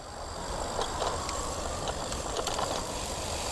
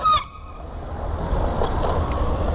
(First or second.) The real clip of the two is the second